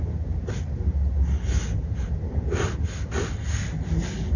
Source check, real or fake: real